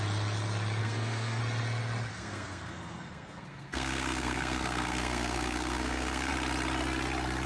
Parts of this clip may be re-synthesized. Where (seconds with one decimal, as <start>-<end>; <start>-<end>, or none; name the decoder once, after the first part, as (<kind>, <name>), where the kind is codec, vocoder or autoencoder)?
0.8-1.4 (codec, SNAC); 2.1-6.3